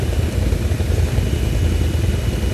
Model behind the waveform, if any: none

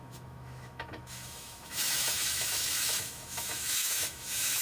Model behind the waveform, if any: autoencoder, DAC-VAE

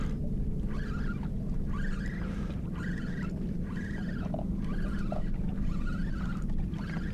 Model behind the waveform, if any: none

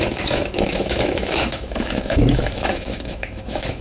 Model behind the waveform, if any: autoencoder, DAC-VAE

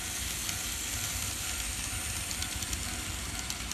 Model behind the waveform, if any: none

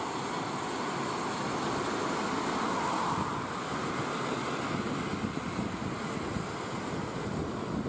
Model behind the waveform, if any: none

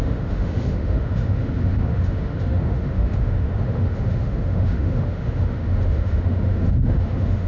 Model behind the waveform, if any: autoencoder, DAC-VAE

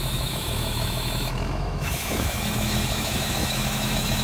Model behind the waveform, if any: autoencoder, DAC-VAE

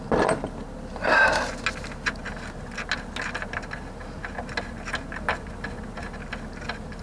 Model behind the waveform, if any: none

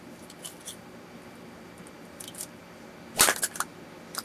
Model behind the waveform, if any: none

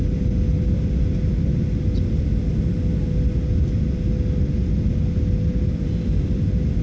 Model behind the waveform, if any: none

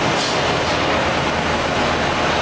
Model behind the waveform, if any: none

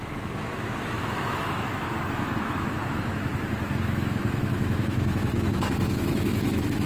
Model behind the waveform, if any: autoencoder, DAC-VAE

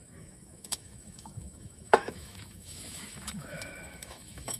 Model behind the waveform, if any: autoencoder, DAC-VAE